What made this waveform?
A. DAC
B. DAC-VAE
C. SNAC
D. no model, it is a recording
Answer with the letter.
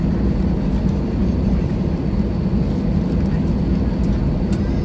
D